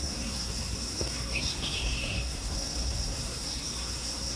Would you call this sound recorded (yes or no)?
no